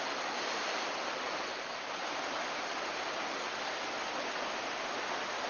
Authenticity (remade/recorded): recorded